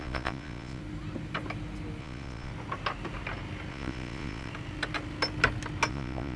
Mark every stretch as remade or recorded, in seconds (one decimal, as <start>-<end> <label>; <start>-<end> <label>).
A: 0.0-0.8 remade; 0.8-2.0 recorded; 2.0-2.5 remade; 2.5-3.7 recorded; 3.7-4.5 remade; 4.5-5.9 recorded; 5.9-6.4 remade